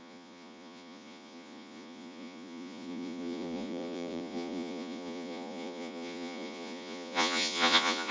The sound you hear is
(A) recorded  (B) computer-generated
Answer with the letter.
B